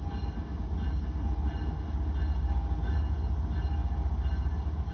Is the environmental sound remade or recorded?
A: recorded